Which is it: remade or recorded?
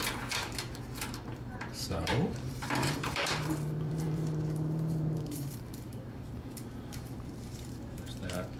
remade